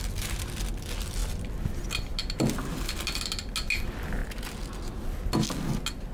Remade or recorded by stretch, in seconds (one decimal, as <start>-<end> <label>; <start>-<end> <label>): 0.0-6.1 recorded